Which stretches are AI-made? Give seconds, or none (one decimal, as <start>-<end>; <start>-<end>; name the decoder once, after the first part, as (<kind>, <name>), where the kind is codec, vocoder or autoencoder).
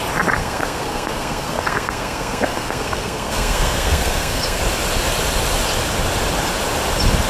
0.4-4.6 (codec, SNAC)